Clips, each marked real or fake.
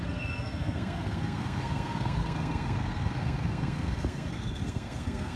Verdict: fake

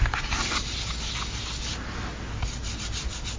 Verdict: real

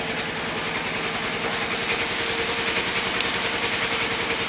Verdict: real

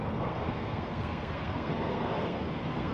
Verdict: fake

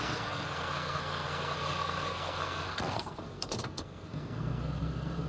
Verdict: fake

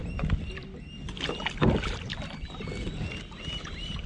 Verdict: real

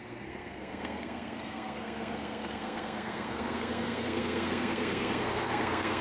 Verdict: fake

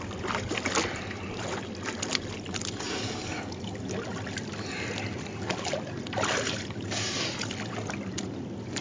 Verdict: real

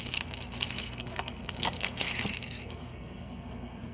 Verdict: fake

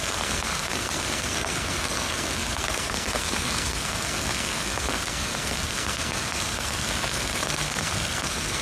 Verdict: fake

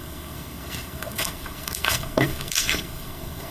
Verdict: fake